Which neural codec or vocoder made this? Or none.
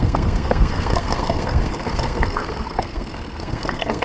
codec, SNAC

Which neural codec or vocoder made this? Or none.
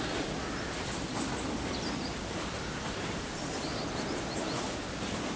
none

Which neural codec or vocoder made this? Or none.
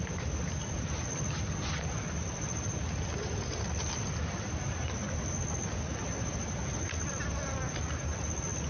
none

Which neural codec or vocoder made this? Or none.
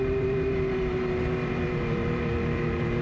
vocoder, BigVGAN v2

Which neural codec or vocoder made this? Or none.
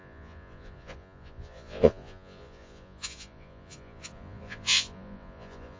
vocoder, Vocos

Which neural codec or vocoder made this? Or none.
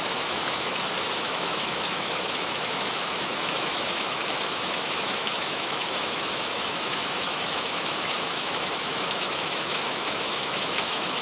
autoencoder, DAC-VAE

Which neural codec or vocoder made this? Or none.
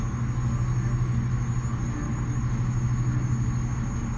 none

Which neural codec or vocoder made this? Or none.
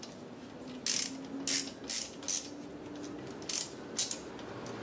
none